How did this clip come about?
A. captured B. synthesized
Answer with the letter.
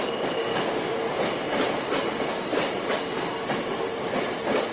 A